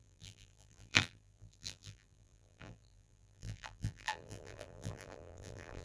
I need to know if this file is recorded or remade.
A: remade